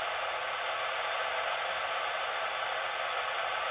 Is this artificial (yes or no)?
no